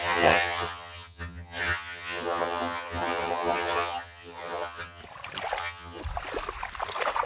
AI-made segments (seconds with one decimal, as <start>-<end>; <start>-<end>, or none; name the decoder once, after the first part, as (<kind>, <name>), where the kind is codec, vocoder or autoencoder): 0.0-5.0 (vocoder, HiFi-GAN); 5.6-6.0